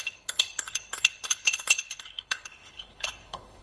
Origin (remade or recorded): remade